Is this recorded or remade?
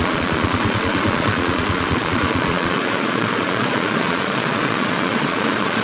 remade